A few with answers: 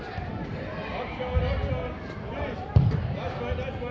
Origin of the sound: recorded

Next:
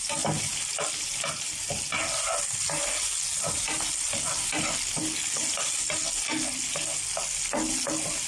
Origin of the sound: recorded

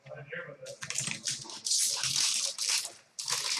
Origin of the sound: recorded